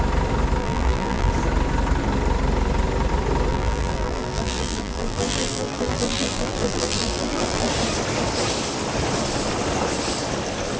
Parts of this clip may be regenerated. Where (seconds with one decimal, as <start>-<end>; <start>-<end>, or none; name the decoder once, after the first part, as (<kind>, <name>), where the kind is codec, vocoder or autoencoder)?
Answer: 0.6-1.3 (vocoder, BigVGAN v2); 3.5-7.7

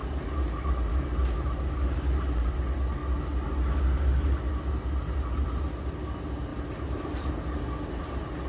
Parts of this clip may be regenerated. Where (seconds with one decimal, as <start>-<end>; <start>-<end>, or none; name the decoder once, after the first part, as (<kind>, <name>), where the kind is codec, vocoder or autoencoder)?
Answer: 0.0-2.6 (vocoder, BigVGAN v2); 6.5-7.3